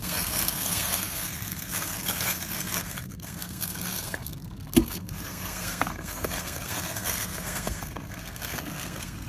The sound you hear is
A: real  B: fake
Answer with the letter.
B